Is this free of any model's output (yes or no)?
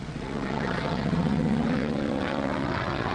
no